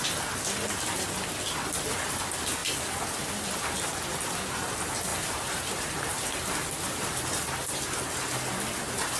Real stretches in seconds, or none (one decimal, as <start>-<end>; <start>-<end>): 0.0-5.1; 7.4-9.2